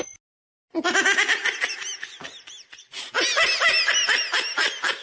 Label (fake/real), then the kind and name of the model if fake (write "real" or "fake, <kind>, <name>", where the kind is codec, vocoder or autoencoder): real